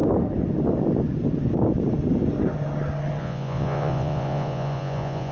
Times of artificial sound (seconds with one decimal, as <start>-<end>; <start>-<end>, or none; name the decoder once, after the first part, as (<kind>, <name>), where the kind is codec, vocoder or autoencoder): 3.2-5.3 (vocoder, Vocos)